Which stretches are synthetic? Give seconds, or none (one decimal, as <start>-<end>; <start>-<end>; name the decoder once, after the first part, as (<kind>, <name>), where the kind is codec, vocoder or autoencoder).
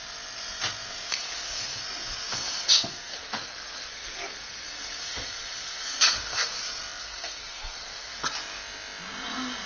1.1-1.8 (codec, SNAC); 2.3-6.6; 7.0-8.2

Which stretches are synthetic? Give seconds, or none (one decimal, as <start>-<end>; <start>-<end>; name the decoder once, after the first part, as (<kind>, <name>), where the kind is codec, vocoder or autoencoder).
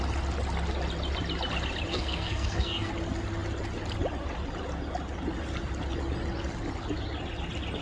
1.9-2.9 (codec, SNAC)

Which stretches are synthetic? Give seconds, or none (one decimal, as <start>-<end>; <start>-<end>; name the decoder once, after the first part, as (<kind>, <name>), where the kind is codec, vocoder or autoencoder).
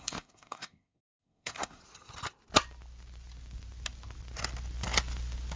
0.0-1.8 (codec, SNAC)